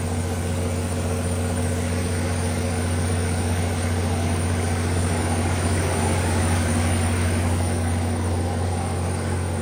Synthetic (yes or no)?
yes